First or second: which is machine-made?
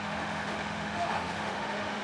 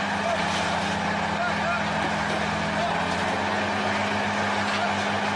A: first